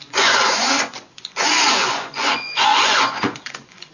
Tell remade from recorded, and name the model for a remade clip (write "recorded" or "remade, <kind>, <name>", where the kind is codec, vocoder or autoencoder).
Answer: remade, vocoder, Vocos